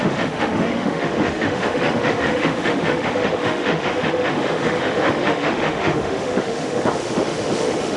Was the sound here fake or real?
fake